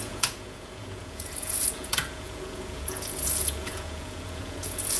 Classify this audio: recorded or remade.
remade